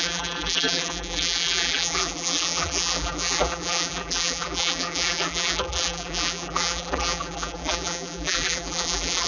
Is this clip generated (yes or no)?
yes